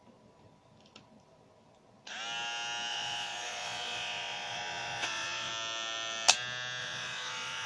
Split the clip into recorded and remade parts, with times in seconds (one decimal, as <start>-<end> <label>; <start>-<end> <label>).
0.0-2.9 recorded; 2.9-5.5 remade; 5.5-6.8 recorded; 6.8-7.7 remade

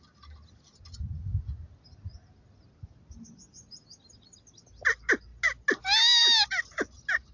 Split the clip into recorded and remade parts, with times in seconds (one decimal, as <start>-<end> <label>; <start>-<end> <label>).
0.0-7.3 recorded

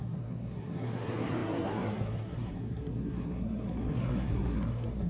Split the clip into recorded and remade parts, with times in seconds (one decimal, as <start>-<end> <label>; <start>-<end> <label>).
0.0-5.1 remade

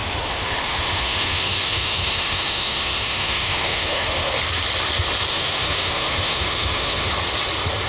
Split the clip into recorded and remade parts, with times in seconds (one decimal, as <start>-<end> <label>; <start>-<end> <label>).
0.0-4.3 remade; 4.3-5.3 recorded; 5.3-7.1 remade; 7.1-7.9 recorded

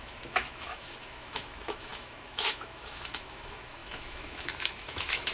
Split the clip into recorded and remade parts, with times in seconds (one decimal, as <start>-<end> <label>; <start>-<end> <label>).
0.0-5.3 remade